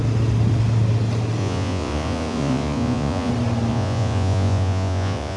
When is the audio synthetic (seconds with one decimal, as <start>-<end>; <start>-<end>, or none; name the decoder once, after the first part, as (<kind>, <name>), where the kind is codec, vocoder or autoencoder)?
1.4-3.3 (vocoder, Vocos); 3.7-5.4